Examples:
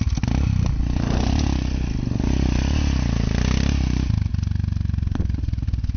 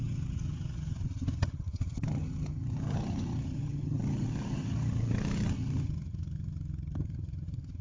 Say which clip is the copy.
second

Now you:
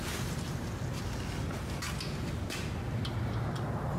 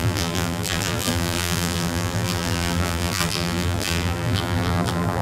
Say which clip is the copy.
second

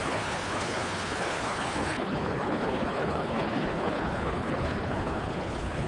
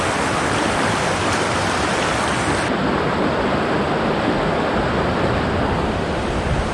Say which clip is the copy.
first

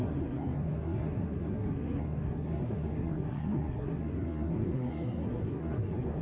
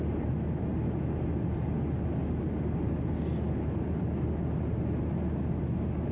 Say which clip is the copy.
first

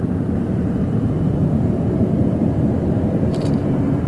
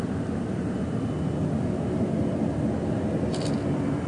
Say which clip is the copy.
first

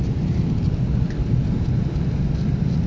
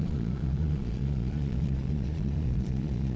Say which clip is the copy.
second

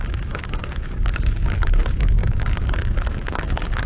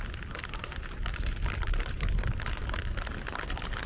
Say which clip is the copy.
first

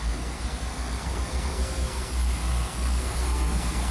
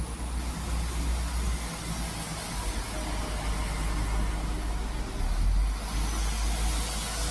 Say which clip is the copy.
first